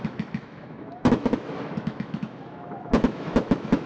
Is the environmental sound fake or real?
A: fake